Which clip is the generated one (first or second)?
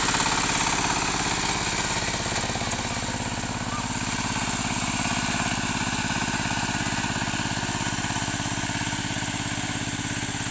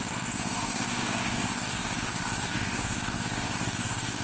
second